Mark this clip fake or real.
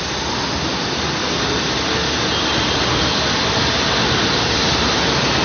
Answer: real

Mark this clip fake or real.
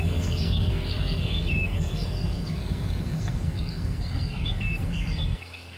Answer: fake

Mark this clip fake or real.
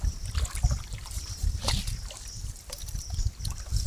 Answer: real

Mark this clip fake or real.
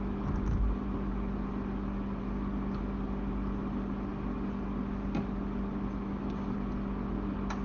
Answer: real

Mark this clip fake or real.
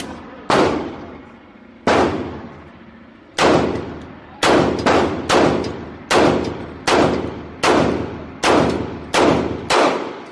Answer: real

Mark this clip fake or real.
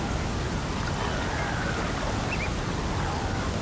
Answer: real